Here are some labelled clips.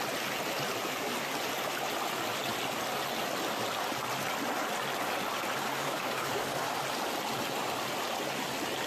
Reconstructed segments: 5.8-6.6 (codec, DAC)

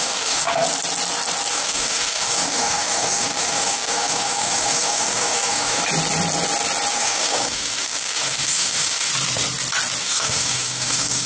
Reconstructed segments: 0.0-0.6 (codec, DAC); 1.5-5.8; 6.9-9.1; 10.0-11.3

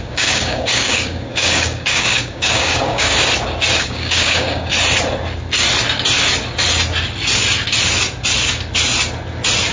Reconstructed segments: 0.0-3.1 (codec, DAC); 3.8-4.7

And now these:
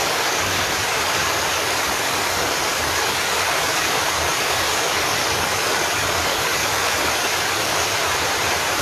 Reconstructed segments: 0.0-8.0 (codec, DAC)